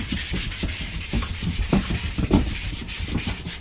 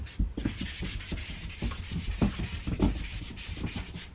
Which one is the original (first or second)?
second